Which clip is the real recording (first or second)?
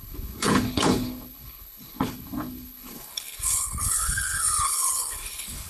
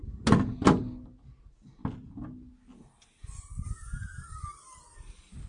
second